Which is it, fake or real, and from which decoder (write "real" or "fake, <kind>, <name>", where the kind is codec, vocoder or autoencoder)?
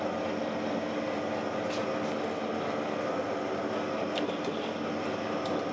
real